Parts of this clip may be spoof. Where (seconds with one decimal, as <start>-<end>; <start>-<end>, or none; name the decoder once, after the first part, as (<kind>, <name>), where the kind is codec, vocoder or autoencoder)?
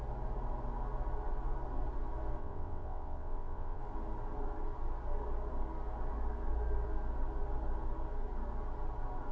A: 2.4-3.8 (vocoder, WaveNeXt)